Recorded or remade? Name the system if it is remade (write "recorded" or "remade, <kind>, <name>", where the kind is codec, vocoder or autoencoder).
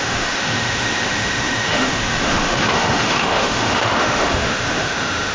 remade, autoencoder, DAC-VAE